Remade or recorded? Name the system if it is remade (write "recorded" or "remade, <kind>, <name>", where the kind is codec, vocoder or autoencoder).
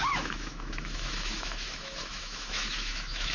remade, autoencoder, DAC-VAE